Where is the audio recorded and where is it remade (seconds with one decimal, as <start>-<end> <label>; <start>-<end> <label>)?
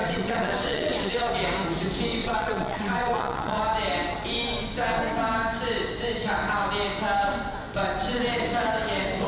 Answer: 0.0-1.3 remade; 1.3-2.2 recorded; 2.2-3.6 remade; 3.6-9.3 recorded